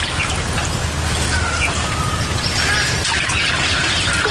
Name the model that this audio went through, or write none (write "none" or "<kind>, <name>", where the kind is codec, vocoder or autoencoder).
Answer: none